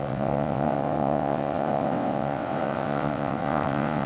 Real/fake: fake